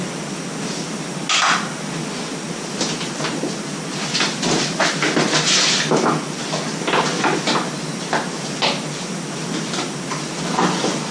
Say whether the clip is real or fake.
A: real